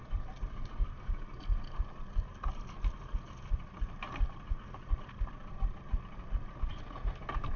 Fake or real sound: real